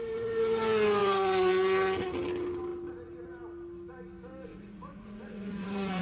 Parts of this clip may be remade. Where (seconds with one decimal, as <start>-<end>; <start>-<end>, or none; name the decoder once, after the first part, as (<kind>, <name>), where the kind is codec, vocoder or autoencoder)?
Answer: 1.0-1.5 (vocoder, Vocos); 4.5-6.0